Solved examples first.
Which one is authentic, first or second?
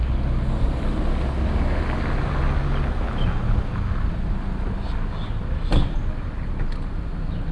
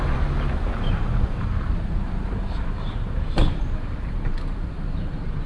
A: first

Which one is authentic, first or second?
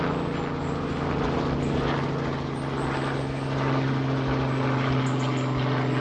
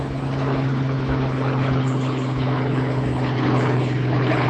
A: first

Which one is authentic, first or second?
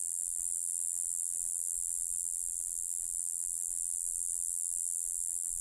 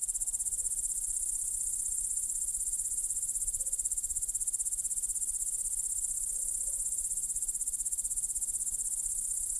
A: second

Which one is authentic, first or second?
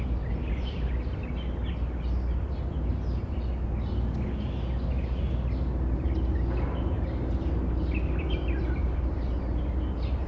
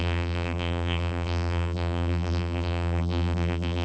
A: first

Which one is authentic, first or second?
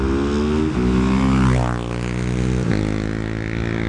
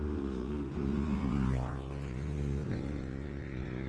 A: first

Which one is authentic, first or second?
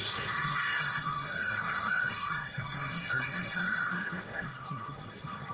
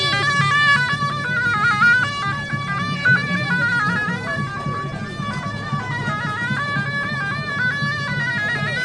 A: second